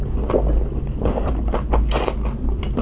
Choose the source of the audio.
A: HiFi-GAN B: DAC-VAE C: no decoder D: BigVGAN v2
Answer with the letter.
C